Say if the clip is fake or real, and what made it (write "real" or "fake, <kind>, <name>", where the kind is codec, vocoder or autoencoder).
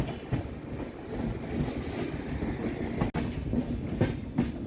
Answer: real